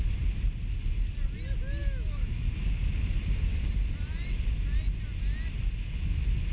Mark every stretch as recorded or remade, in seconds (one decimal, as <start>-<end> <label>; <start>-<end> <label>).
0.0-1.8 recorded; 1.8-2.4 remade; 2.4-6.5 recorded